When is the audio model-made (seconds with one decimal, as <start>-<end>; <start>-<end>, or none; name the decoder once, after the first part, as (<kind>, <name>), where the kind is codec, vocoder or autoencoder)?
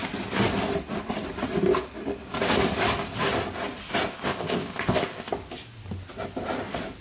4.1-5.3 (codec, ZipCodec)